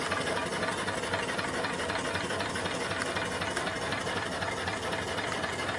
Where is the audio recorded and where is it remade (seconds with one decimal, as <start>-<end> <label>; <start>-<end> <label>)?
0.0-5.8 recorded